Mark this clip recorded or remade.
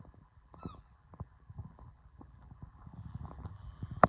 remade